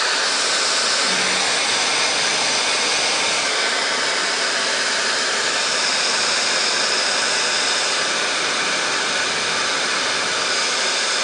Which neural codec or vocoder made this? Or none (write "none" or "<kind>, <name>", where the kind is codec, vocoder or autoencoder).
vocoder, BigVGAN v2